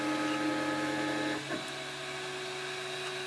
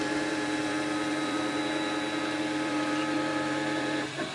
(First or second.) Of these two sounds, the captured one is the first